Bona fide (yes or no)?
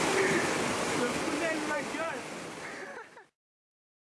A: yes